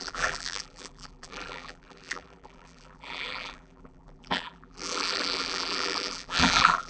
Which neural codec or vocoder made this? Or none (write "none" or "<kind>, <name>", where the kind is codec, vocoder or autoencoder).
vocoder, BigVGAN v2